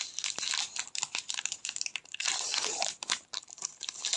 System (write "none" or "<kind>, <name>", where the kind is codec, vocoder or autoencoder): none